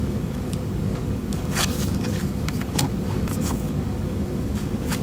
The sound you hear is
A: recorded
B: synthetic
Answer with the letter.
B